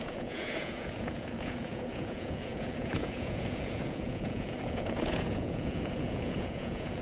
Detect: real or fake fake